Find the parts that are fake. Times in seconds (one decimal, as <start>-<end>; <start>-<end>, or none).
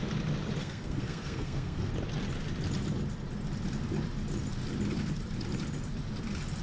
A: 0.6-1.9